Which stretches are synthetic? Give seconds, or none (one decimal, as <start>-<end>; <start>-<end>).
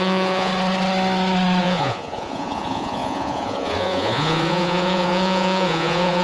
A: 0.0-0.5; 1.6-6.2